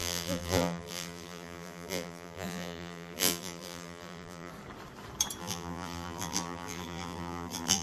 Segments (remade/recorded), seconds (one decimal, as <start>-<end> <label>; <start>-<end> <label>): 0.0-4.5 remade; 4.5-5.4 recorded; 5.4-7.8 remade